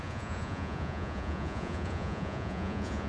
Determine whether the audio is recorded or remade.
remade